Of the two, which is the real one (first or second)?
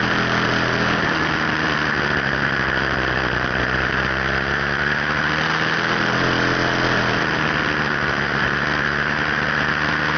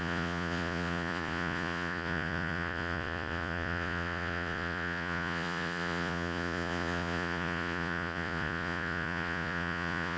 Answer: first